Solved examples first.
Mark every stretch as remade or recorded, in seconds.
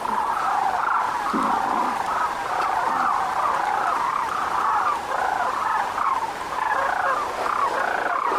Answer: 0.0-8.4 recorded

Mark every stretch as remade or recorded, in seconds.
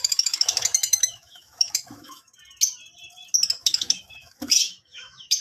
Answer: 0.0-2.3 remade; 2.3-3.6 recorded; 3.6-5.4 remade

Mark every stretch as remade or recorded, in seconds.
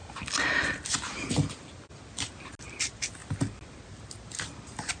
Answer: 0.0-5.0 recorded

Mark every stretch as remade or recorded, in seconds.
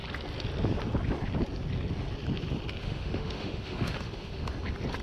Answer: 0.0-2.8 recorded; 2.8-4.5 remade; 4.5-5.0 recorded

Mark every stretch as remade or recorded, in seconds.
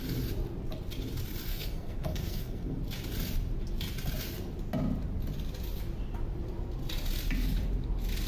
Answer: 0.0-1.5 recorded; 1.5-2.8 remade; 2.8-8.3 recorded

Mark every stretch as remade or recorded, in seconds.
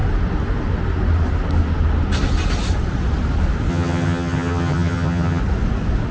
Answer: 0.0-3.7 recorded; 3.7-5.4 remade; 5.4-6.1 recorded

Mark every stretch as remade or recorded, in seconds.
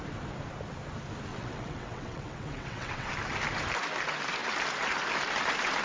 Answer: 0.0-1.3 recorded; 1.3-3.1 remade; 3.1-5.8 recorded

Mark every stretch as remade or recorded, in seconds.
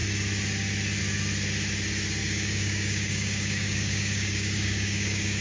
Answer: 0.0-2.2 recorded; 2.2-5.4 remade